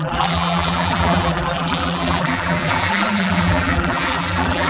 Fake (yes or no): yes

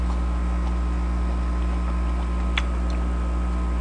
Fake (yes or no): no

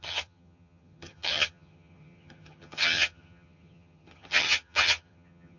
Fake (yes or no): yes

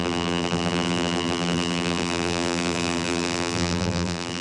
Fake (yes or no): yes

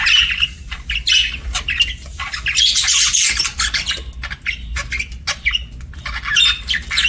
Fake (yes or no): no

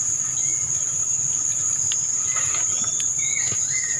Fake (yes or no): no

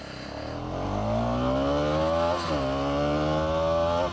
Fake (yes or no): no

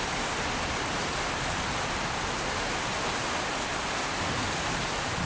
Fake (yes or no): no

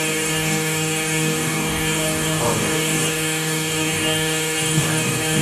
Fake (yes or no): yes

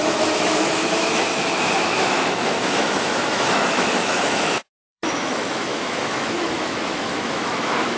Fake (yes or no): yes